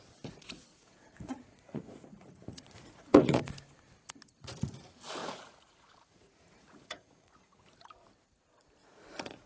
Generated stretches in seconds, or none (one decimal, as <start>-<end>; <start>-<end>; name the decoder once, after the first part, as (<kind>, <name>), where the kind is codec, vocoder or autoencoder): 0.7-3.4 (vocoder, Vocos); 5.2-7.6; 8.8-9.5